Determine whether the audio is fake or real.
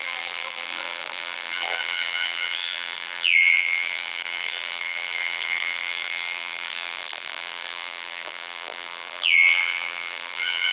fake